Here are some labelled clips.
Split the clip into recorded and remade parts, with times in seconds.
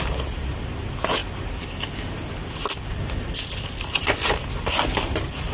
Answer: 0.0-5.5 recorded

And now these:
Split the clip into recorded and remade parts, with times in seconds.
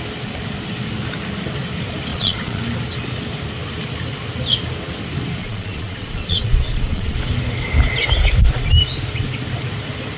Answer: 0.0-2.1 recorded; 2.1-2.6 remade; 2.6-5.4 recorded; 5.4-7.2 remade; 7.2-10.2 recorded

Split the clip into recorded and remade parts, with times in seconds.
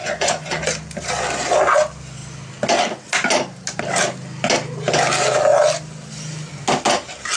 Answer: 0.0-0.6 remade; 0.6-7.4 recorded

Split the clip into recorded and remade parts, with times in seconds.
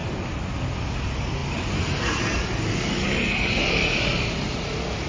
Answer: 0.0-5.1 recorded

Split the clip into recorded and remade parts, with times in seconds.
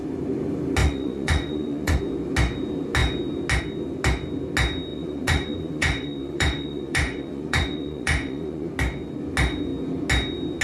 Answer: 0.0-0.8 recorded; 0.8-2.0 remade; 2.0-4.9 recorded; 4.9-8.7 remade; 8.7-10.6 recorded